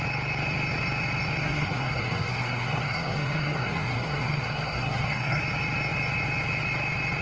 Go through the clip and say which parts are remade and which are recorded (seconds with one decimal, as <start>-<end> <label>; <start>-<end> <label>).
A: 0.0-1.4 recorded; 1.4-5.4 remade; 5.4-7.2 recorded